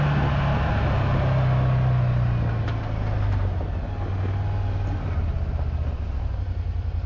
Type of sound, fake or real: real